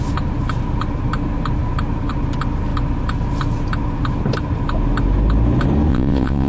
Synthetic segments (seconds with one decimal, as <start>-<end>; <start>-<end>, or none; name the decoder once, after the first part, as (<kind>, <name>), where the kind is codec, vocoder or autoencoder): 5.9-6.5 (vocoder, Vocos)